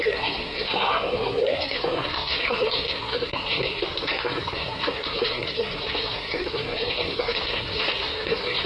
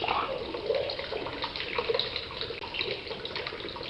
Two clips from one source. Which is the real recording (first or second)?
second